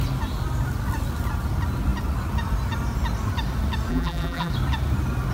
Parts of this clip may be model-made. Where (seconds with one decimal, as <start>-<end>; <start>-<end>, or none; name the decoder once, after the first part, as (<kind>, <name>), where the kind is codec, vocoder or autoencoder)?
3.9-4.5 (vocoder, BigVGAN v2)